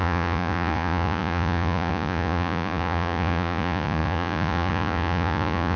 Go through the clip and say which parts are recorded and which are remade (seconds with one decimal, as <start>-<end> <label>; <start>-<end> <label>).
0.0-5.8 remade